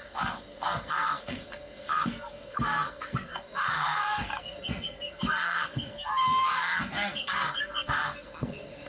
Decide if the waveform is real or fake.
fake